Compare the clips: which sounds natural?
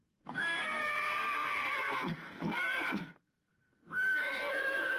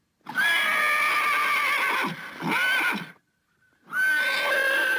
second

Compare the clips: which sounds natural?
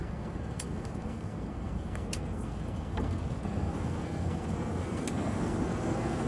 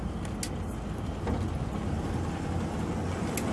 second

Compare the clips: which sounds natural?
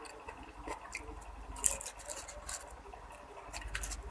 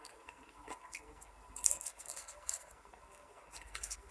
first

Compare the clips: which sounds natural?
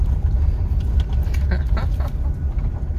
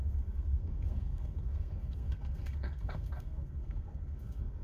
first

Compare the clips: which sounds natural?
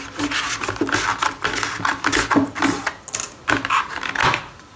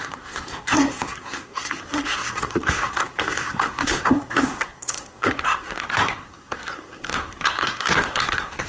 first